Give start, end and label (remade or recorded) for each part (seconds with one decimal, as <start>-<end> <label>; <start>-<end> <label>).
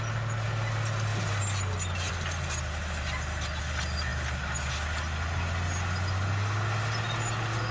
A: 0.0-7.7 recorded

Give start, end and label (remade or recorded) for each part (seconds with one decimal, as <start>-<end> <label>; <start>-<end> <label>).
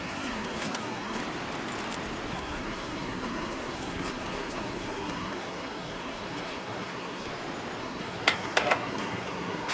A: 0.0-1.2 remade; 1.2-2.3 recorded; 2.3-7.3 remade; 7.3-7.8 recorded; 7.8-9.7 remade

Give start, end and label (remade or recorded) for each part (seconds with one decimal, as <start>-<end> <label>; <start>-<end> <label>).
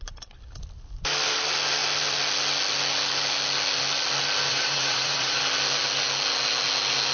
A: 0.0-4.5 recorded; 4.5-5.4 remade; 5.4-7.1 recorded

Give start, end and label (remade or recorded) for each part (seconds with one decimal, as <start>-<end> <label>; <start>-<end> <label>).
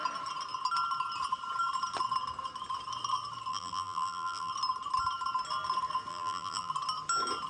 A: 0.0-3.5 recorded; 3.5-4.5 remade; 4.5-6.1 recorded; 6.1-6.7 remade; 6.7-7.5 recorded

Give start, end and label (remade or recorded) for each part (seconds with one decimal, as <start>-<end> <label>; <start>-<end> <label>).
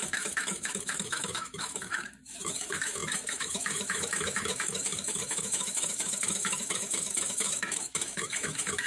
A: 0.0-8.9 remade